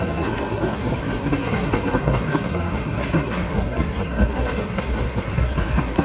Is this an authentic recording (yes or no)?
no